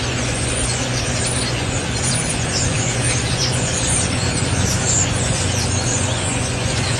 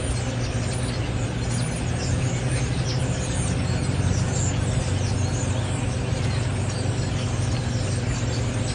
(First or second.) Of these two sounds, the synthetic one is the first